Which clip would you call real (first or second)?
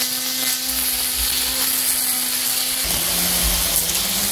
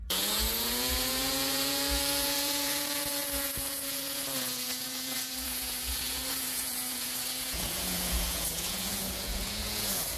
first